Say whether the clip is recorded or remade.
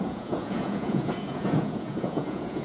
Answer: remade